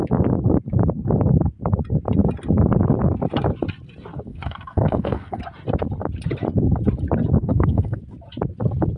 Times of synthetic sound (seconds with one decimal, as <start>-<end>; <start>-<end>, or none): 4.3-5.4; 7.4-8.0